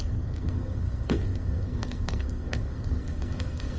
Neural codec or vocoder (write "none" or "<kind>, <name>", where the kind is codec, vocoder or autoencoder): codec, SNAC